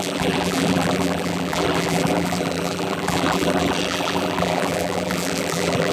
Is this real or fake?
fake